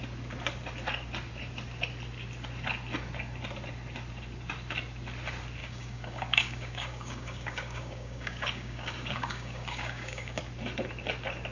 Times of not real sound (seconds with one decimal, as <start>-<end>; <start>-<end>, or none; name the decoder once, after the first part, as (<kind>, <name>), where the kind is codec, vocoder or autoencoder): 5.6-10.4 (codec, DAC)